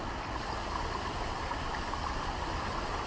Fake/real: real